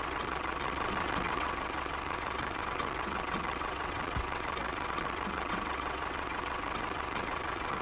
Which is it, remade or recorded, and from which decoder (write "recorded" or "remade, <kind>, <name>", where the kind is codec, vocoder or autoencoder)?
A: remade, vocoder, WaveNeXt